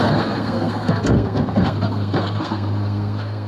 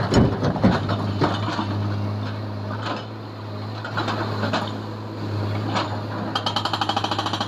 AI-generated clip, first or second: first